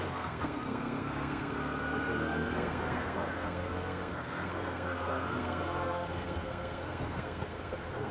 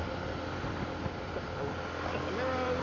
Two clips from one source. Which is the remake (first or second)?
first